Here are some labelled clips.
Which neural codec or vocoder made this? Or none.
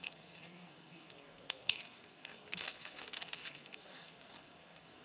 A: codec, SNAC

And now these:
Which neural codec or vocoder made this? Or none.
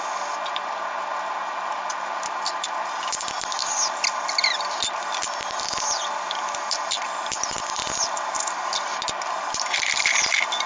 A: none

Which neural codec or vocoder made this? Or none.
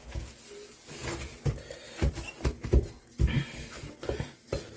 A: none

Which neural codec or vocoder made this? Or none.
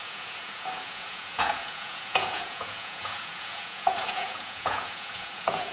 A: vocoder, Vocos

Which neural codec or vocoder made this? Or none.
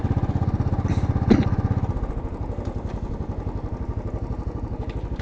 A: none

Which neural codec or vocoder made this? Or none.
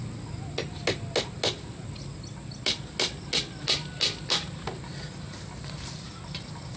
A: none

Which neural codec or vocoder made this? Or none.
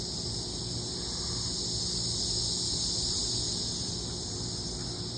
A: none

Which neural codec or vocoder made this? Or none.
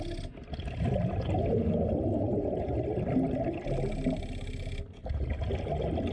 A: none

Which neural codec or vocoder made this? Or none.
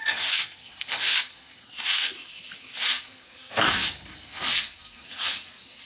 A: codec, SNAC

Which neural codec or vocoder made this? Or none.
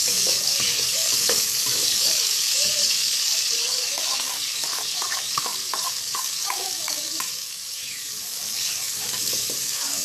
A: codec, DAC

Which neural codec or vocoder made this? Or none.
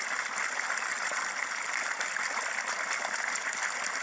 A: none